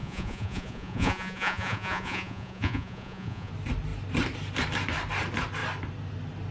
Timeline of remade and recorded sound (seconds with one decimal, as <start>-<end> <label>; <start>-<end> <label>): 0.0-3.5 remade; 3.5-6.5 recorded